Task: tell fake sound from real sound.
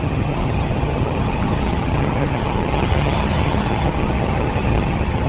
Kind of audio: fake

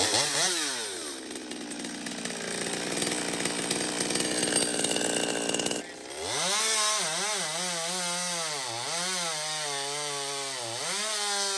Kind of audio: real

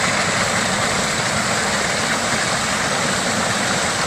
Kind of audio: real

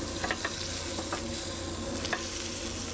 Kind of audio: real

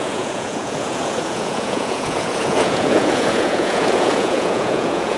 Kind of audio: fake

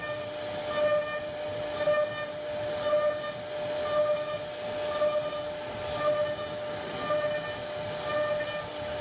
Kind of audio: real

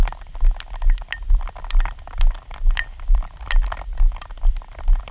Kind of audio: real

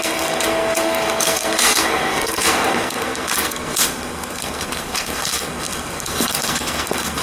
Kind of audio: fake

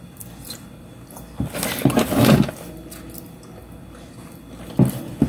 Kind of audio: real